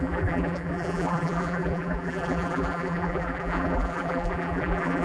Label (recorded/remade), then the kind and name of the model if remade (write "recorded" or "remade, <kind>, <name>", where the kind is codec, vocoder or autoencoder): remade, vocoder, BigVGAN v2